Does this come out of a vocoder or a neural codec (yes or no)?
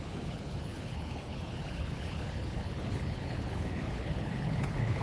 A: yes